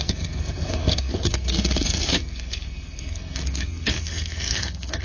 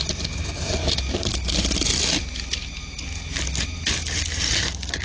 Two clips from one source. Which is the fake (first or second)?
first